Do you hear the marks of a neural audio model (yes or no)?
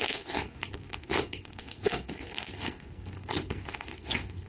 yes